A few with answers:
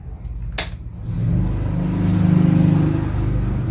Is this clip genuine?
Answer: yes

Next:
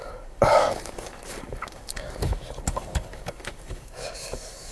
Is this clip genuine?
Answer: no